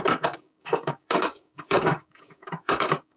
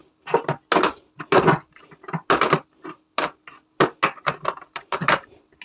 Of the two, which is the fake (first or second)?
first